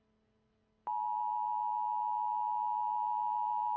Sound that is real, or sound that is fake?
real